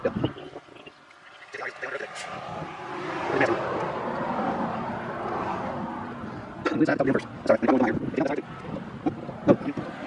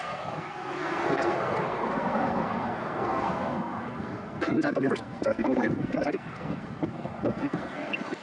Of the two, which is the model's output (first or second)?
second